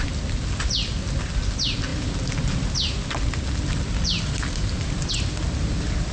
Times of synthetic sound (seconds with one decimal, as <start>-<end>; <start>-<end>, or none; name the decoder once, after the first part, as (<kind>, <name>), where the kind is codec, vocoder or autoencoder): none